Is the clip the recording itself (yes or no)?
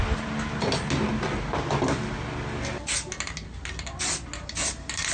yes